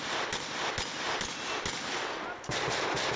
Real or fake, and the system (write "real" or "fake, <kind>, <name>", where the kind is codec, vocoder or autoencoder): real